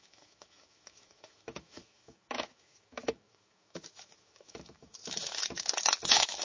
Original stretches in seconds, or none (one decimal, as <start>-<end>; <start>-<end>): none